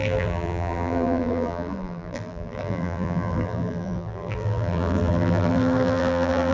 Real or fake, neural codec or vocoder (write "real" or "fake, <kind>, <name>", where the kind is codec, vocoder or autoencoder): fake, vocoder, BigVGAN v2